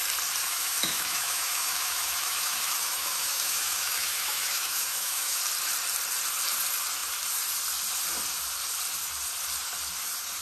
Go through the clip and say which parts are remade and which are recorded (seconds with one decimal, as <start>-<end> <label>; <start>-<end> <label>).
0.0-0.4 recorded; 0.4-5.4 remade; 5.4-10.4 recorded